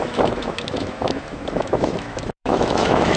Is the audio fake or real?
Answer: fake